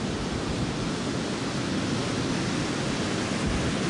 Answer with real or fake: real